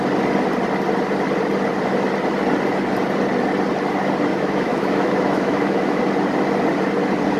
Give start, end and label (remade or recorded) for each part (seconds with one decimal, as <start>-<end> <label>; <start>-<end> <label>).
0.0-4.3 recorded; 4.3-6.0 remade; 6.0-7.4 recorded